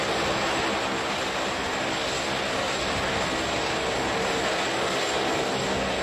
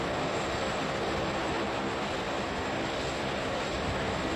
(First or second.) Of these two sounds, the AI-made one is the second